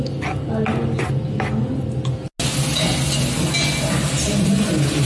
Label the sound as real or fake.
real